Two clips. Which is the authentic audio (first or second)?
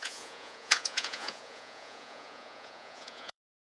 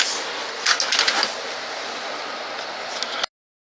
second